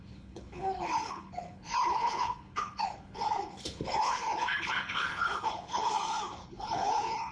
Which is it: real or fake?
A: fake